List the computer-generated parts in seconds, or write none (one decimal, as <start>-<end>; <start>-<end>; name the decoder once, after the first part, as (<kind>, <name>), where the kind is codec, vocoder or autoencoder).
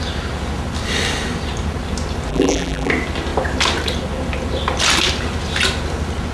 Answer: 2.3-2.9 (vocoder, BigVGAN v2)